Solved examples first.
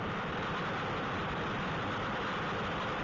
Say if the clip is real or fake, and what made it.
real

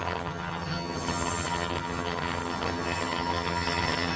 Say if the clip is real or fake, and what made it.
fake, vocoder, HiFi-GAN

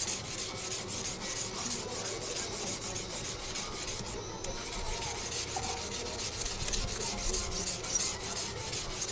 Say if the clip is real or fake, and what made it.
real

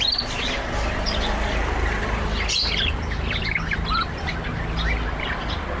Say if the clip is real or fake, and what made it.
real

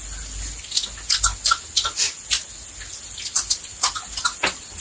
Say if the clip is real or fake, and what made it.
real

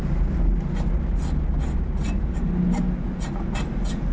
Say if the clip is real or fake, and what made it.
real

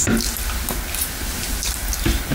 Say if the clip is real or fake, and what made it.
real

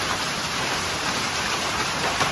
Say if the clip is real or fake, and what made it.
fake, vocoder, BigVGAN v2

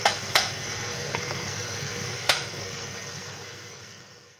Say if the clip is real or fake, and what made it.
fake, codec, SNAC